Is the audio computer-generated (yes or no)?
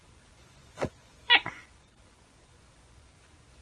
yes